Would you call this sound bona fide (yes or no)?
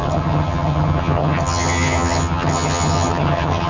no